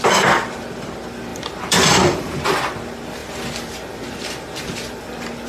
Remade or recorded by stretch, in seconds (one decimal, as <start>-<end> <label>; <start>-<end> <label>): 0.0-1.3 recorded; 1.3-2.6 remade; 2.6-3.2 recorded; 3.2-4.6 remade; 4.6-5.5 recorded